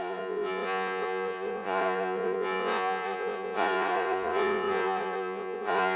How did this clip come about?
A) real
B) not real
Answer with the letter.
B